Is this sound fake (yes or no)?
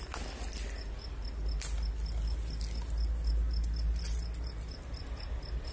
no